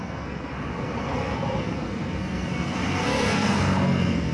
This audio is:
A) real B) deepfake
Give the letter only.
B